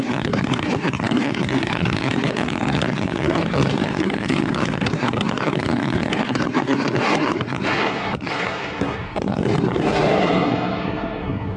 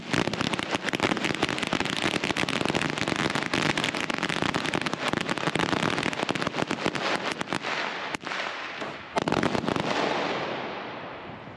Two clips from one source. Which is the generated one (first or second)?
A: first